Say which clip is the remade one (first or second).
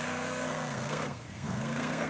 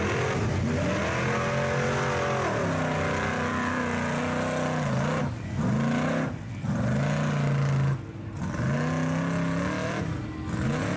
first